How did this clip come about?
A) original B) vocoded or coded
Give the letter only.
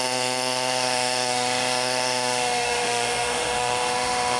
B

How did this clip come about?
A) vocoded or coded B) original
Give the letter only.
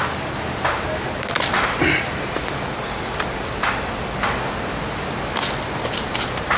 B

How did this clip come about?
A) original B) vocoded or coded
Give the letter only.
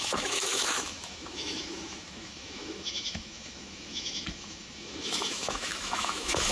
B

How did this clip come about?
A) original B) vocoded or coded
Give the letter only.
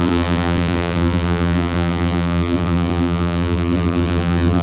B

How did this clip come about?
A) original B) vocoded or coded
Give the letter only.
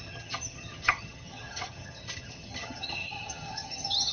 B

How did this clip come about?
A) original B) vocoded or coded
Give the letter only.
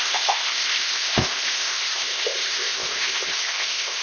B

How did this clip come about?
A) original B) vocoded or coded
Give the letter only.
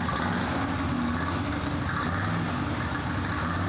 A